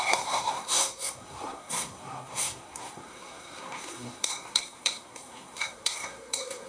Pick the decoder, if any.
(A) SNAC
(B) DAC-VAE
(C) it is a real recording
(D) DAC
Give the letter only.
A